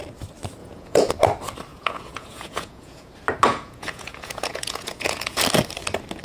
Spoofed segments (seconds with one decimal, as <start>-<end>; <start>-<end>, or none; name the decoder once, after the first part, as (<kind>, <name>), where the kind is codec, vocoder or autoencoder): 0.6-1.1 (vocoder, Vocos); 1.7-3.1; 3.5-5.4